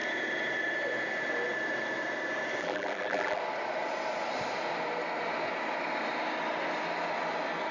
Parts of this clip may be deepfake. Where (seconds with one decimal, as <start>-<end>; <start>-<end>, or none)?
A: 2.6-3.4